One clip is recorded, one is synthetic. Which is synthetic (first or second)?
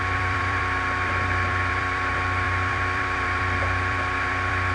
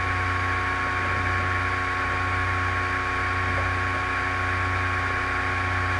first